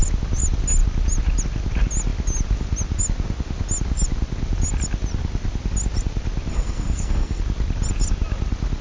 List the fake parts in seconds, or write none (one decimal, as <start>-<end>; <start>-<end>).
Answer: 6.5-7.4